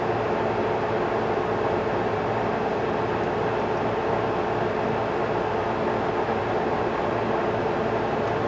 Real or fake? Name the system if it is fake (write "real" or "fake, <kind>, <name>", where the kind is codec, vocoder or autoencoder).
real